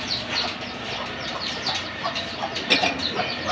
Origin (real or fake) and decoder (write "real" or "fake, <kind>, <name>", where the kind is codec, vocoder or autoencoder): real